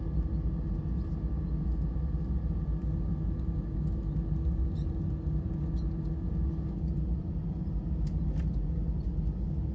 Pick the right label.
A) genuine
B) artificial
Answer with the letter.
A